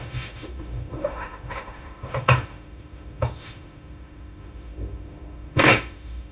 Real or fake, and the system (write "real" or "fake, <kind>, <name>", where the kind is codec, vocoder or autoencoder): fake, autoencoder, DAC-VAE